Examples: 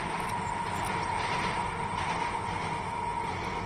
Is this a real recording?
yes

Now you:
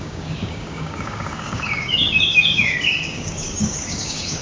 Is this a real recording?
no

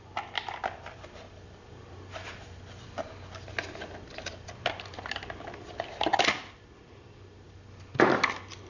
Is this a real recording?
yes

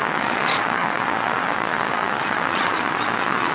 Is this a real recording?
no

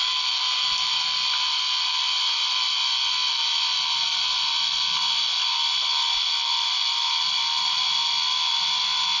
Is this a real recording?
no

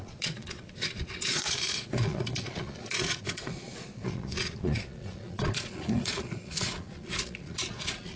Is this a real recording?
no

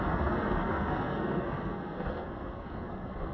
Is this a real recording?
no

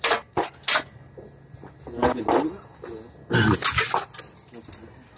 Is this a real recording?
yes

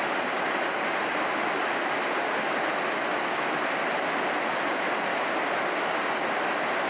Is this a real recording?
yes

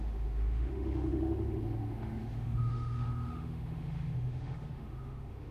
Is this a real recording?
no